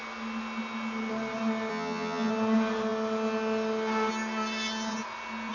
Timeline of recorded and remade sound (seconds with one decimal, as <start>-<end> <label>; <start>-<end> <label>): 0.0-1.7 recorded; 1.7-2.3 remade; 2.3-5.5 recorded